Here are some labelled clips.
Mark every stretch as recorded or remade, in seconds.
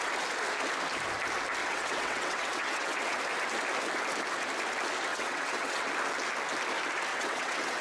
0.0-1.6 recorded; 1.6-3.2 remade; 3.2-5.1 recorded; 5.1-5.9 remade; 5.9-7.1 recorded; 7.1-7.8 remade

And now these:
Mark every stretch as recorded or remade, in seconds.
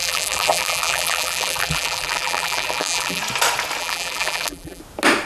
0.0-3.2 remade; 3.2-3.8 recorded; 3.8-4.8 remade; 4.8-5.3 recorded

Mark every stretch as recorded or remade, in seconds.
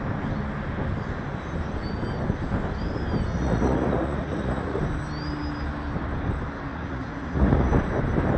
0.0-3.3 recorded; 3.3-4.8 remade; 4.8-6.7 recorded; 6.7-7.7 remade; 7.7-8.4 recorded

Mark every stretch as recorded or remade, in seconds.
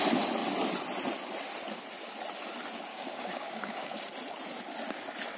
0.0-2.9 recorded; 2.9-4.0 remade; 4.0-5.4 recorded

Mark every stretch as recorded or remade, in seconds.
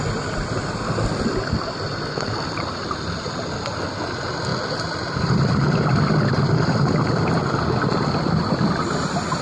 0.0-4.5 recorded; 4.5-5.8 remade; 5.8-9.4 recorded